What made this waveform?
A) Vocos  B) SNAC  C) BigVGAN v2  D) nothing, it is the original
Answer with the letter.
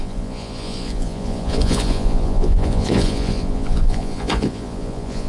A